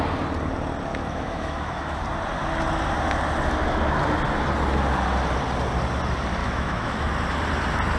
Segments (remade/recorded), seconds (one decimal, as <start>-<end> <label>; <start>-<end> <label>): 0.0-0.9 recorded; 0.9-2.0 remade; 2.0-6.4 recorded; 6.4-7.1 remade; 7.1-8.0 recorded